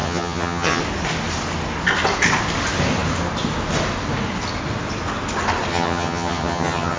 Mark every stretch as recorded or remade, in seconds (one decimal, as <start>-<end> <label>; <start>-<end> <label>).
0.0-0.8 remade; 0.8-5.7 recorded; 5.7-7.0 remade